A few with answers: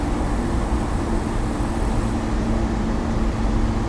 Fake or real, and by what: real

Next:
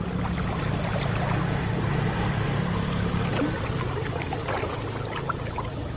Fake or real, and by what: real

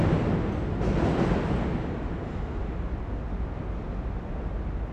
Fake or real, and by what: real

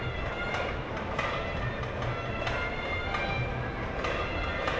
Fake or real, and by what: real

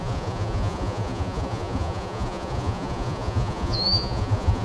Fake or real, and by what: fake, vocoder, Vocos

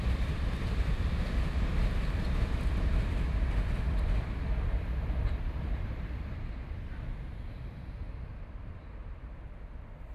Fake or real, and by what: fake, vocoder, BigVGAN v2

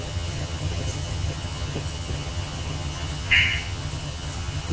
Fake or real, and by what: fake, vocoder, HiFi-GAN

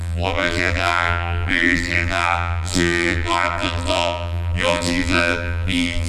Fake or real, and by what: fake, vocoder, BigVGAN v2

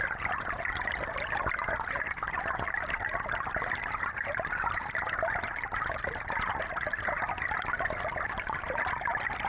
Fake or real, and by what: real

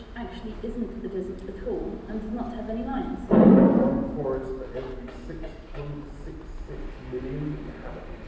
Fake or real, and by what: real